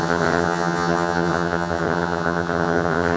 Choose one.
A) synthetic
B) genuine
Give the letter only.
A